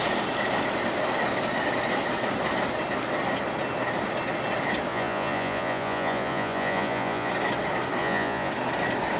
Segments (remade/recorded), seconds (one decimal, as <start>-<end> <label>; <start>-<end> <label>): 0.0-4.9 recorded; 4.9-7.3 remade; 7.3-8.0 recorded; 8.0-8.5 remade; 8.5-9.2 recorded